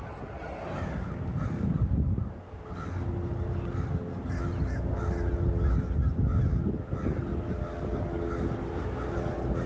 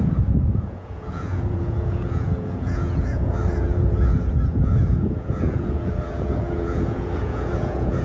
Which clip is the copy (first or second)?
second